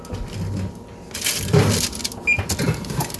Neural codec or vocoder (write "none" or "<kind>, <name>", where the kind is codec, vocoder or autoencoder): none